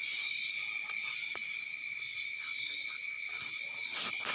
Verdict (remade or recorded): recorded